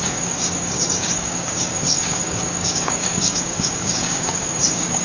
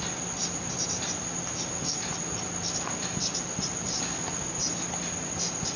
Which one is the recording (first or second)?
second